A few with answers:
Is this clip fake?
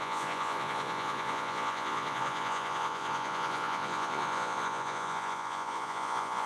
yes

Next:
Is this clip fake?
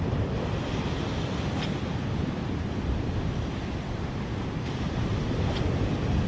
no